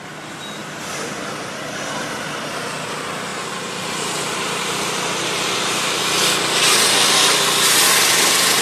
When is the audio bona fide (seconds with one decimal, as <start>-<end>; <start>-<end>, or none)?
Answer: 0.0-3.3; 6.0-8.6

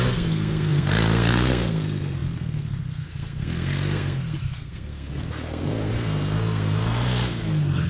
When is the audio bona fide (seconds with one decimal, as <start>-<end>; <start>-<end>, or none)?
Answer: none

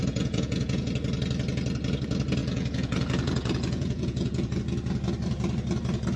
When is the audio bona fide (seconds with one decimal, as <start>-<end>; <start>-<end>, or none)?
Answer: 0.9-2.4; 4.6-6.2

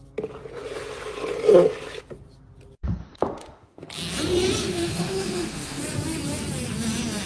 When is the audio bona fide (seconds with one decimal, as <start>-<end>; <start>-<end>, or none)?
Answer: 0.0-3.0; 3.8-4.6; 5.8-7.3